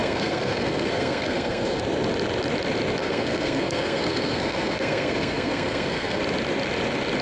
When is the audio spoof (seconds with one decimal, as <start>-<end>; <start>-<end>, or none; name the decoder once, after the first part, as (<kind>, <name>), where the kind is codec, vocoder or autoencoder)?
0.0-1.8 (codec, SNAC); 3.0-6.2